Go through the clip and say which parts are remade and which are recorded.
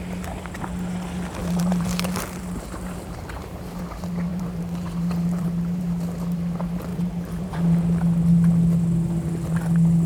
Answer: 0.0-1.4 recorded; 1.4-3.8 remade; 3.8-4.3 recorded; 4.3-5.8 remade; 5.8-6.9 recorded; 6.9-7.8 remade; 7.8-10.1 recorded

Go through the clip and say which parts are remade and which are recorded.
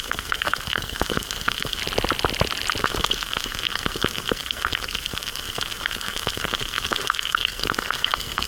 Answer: 0.0-1.8 remade; 1.8-2.8 recorded; 2.8-8.5 remade